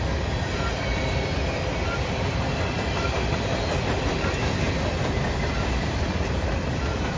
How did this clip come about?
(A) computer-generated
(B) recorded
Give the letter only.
A